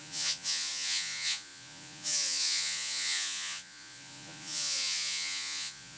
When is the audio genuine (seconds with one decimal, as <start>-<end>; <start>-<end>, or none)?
none